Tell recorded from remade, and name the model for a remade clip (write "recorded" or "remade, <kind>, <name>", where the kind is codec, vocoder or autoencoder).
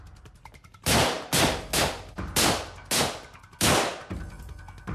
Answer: recorded